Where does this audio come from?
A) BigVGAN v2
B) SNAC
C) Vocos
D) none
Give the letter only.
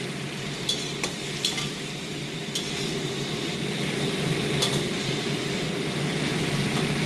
D